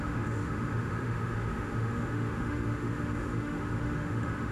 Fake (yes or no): yes